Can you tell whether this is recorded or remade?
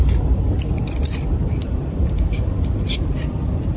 recorded